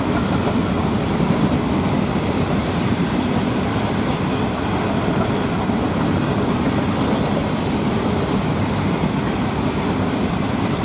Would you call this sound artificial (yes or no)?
no